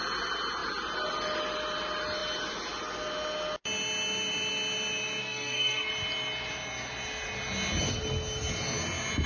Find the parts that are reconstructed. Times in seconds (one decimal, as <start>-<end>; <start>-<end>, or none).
5.2-5.9